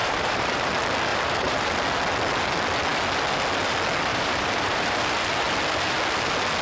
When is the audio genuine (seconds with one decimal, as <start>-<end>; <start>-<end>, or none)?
0.7-1.1; 1.8-4.1; 5.0-6.6